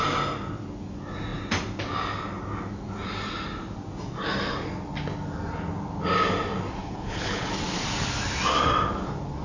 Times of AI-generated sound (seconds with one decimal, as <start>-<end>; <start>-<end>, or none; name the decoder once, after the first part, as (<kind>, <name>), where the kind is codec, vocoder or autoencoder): 6.8-7.5 (codec, HILCodec)